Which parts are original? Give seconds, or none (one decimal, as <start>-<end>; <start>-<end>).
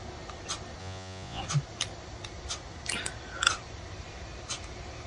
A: 0.0-0.8; 1.4-5.1